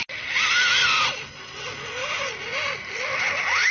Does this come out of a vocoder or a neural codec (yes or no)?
no